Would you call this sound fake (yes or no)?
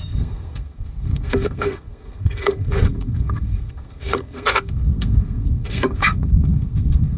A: yes